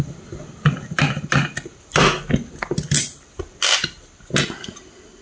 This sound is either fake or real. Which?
real